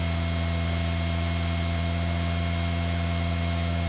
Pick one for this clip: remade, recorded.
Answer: recorded